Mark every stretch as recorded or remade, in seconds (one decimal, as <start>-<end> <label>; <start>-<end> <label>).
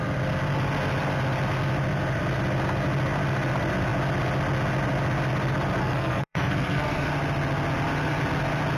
0.0-5.8 recorded; 5.8-7.1 remade; 7.1-8.8 recorded